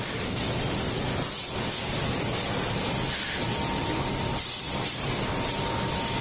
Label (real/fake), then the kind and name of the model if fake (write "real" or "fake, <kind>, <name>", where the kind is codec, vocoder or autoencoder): real